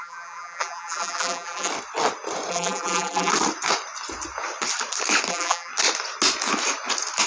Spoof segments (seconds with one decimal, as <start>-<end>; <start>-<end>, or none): 0.0-1.7; 2.5-3.3; 5.3-5.7